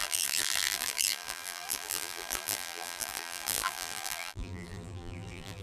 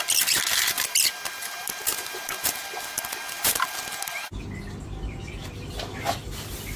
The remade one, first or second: first